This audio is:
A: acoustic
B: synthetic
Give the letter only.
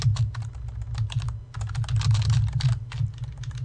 A